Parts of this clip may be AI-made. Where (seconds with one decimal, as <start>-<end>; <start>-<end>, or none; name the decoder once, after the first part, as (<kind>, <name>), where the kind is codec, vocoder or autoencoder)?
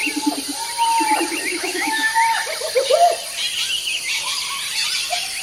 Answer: 1.5-2.1 (autoencoder, DAC-VAE)